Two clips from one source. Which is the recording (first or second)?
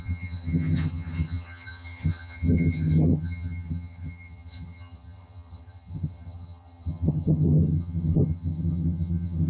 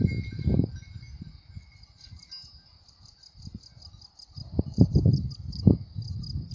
second